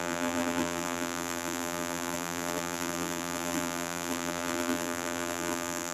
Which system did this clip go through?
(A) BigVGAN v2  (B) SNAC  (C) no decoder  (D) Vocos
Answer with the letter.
A